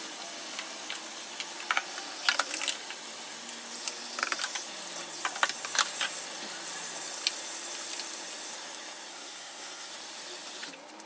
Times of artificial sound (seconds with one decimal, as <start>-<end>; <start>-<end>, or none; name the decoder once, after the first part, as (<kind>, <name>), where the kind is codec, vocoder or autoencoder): 9.1-9.9 (codec, SNAC)